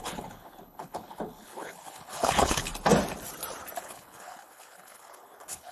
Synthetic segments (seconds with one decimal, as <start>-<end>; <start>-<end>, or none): 0.0-2.7; 3.8-5.7